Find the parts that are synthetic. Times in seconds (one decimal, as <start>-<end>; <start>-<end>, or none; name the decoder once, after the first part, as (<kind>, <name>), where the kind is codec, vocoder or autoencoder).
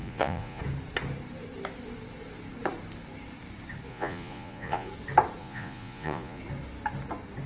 0.0-0.6 (vocoder, Vocos); 3.9-4.9; 5.4-6.4